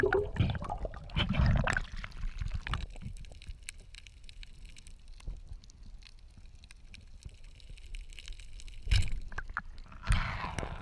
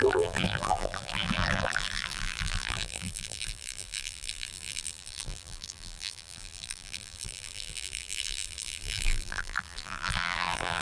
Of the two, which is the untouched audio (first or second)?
first